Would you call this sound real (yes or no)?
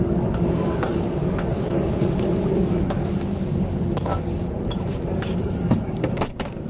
no